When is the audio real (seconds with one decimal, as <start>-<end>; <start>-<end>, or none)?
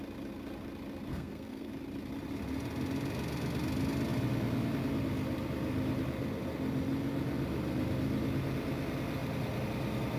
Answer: 0.0-1.1; 1.7-10.2